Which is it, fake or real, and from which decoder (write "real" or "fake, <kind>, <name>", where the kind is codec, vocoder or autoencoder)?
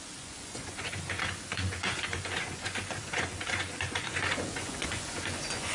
fake, vocoder, Vocos